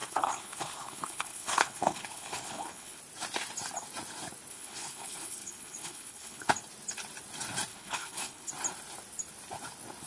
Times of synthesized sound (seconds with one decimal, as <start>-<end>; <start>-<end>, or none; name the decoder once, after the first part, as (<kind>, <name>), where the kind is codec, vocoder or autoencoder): 0.0-3.0 (codec, HILCodec); 4.5-6.5; 7.7-8.5